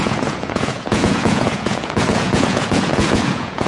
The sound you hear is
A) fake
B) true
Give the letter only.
A